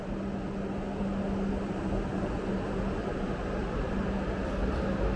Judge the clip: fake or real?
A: real